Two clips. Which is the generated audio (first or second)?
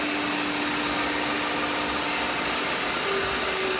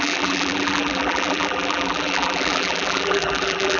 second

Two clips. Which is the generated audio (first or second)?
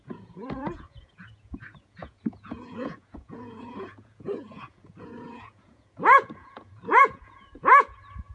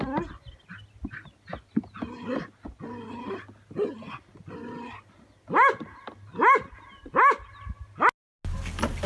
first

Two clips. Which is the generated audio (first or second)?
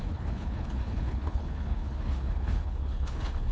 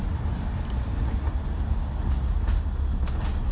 first